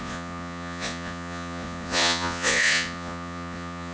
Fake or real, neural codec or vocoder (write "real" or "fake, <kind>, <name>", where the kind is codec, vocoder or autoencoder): fake, vocoder, Vocos